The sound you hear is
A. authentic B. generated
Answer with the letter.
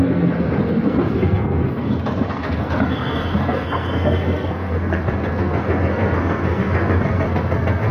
B